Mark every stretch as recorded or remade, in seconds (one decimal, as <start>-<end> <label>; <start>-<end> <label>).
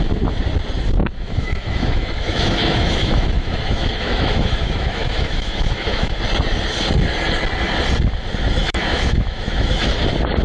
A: 0.0-1.0 recorded; 1.0-6.2 remade; 6.2-8.6 recorded; 8.6-9.9 remade; 9.9-10.4 recorded